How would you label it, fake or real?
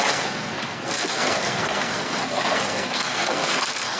fake